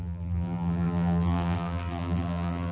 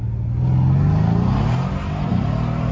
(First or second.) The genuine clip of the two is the second